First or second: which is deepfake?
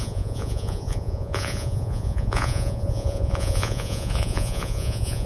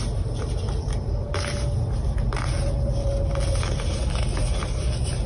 first